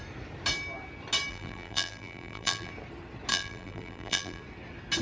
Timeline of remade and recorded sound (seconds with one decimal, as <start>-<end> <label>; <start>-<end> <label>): 0.0-1.3 recorded; 1.3-2.7 remade; 2.7-3.3 recorded; 3.3-4.4 remade; 4.4-5.0 recorded